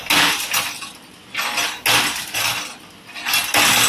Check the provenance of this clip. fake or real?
real